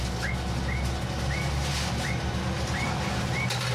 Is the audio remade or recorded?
recorded